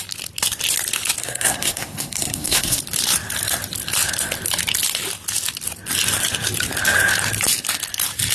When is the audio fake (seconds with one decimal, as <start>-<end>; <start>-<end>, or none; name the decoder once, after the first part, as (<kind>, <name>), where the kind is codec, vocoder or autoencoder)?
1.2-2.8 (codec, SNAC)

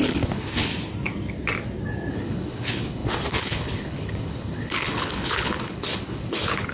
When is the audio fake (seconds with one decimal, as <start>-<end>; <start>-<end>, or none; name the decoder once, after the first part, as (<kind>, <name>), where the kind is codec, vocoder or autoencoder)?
0.0-0.7 (codec, HILCodec); 2.1-6.7

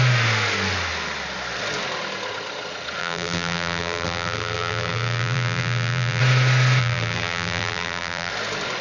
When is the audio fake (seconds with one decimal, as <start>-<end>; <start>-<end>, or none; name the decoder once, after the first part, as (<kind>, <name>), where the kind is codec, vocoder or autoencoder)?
3.0-6.2 (vocoder, BigVGAN v2); 6.8-8.3